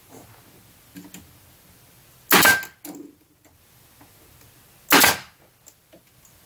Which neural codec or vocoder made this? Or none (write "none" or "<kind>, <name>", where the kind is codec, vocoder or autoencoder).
none